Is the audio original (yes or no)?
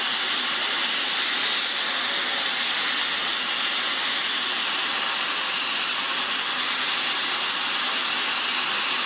yes